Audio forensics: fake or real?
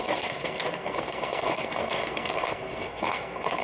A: fake